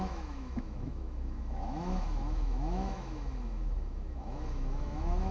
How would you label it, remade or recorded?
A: remade